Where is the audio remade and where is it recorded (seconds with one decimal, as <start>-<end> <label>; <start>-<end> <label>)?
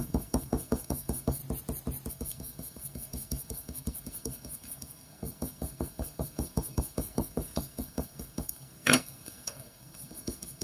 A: 0.0-1.4 remade; 1.4-2.1 recorded; 2.1-10.6 remade